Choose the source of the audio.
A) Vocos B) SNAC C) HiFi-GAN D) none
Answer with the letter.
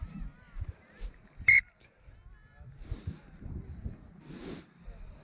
D